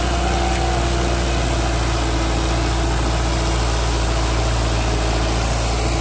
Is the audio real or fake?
real